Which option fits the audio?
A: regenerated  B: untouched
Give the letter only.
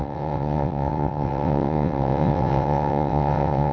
A